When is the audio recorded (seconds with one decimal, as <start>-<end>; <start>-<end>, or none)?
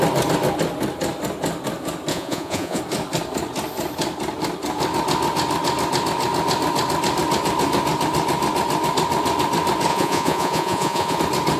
0.0-2.1; 2.8-9.9; 11.2-11.6